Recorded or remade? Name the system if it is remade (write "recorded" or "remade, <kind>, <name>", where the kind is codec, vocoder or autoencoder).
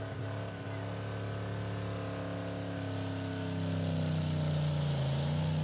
recorded